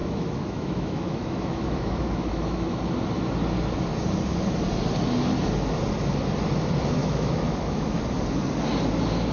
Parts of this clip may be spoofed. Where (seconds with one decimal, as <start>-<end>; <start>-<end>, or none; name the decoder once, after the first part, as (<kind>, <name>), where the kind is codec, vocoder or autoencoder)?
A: 0.0-2.8 (autoencoder, DAC-VAE); 7.0-8.0